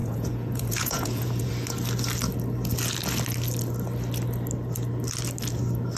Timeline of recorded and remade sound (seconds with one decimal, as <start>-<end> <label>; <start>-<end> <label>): 0.0-1.5 remade; 1.5-6.0 recorded